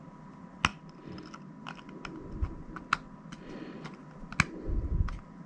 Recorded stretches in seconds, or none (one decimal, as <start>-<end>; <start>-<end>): 0.0-5.5